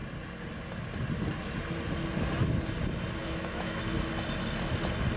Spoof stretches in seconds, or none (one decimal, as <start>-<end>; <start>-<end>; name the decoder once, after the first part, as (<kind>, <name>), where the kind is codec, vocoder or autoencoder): 3.2-3.8 (autoencoder, DAC-VAE)